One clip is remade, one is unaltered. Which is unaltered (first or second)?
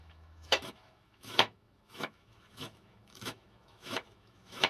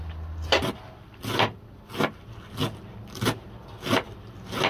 second